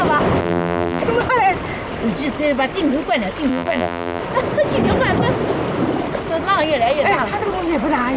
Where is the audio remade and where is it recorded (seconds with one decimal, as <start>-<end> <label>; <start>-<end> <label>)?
0.0-0.4 recorded; 0.4-1.0 remade; 1.0-3.5 recorded; 3.5-4.2 remade; 4.2-8.2 recorded